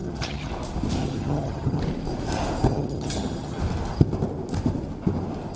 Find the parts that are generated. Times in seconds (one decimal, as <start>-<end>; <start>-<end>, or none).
0.0-0.5; 1.0-1.8; 2.7-3.6